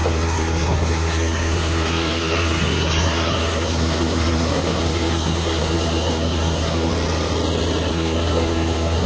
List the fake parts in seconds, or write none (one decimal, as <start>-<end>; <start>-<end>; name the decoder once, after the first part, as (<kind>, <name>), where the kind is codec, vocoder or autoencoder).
0.0-6.9 (codec, SNAC); 7.9-9.1